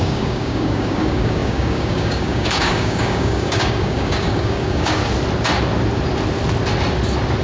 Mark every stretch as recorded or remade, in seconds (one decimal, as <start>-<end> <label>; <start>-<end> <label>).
0.0-5.0 remade; 5.0-7.4 recorded